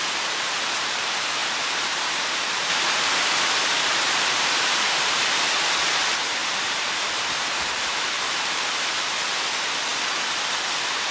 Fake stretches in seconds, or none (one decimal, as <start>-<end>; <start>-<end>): 1.4-5.4; 6.4-8.6